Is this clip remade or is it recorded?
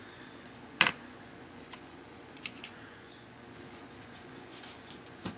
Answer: remade